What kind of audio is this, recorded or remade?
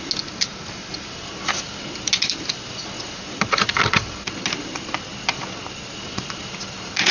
recorded